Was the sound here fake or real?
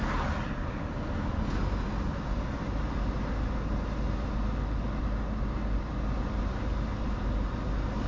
real